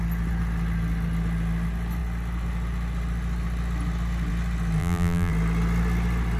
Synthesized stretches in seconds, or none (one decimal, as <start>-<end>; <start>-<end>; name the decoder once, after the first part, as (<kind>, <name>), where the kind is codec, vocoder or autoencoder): 4.8-5.3 (vocoder, BigVGAN v2)